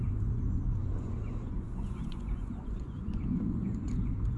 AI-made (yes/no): yes